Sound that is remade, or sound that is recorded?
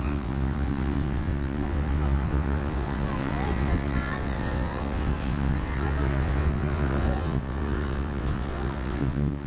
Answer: remade